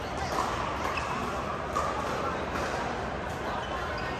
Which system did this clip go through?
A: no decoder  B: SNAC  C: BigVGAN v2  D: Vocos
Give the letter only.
A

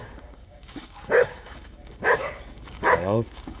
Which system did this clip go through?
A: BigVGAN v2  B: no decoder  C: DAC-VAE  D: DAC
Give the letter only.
D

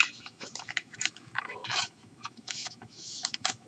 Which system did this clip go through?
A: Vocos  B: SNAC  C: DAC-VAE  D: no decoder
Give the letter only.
C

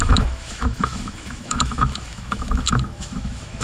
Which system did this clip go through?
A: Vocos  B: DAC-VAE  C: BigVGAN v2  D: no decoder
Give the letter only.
B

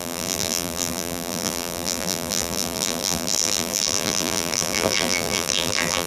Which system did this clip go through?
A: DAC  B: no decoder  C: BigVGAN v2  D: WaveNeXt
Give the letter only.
C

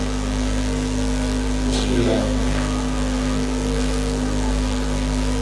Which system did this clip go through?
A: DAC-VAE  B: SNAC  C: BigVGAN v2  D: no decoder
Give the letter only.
B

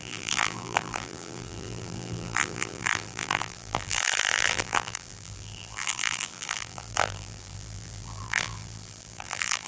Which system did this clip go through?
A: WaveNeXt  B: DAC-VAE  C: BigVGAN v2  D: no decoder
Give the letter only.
C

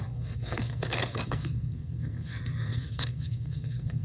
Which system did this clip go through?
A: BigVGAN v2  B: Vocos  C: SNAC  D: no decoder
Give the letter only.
C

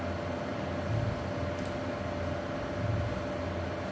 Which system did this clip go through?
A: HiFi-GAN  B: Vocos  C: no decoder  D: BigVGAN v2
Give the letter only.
C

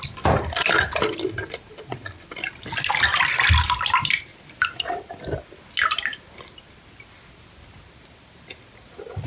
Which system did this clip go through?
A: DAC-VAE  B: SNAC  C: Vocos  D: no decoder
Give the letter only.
D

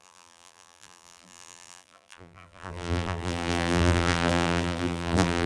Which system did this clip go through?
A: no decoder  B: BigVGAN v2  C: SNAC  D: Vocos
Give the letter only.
B